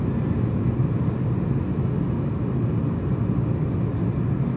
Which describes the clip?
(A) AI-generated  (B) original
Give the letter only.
B